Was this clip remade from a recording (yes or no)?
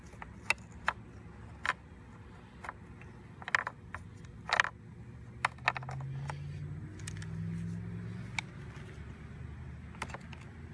no